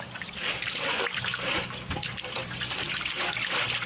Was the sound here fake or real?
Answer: real